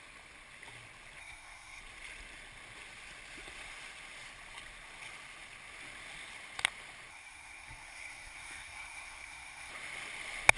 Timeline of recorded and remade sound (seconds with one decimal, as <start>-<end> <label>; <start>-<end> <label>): 0.0-1.2 recorded; 1.2-1.8 remade; 1.8-7.1 recorded; 7.1-9.7 remade; 9.7-10.6 recorded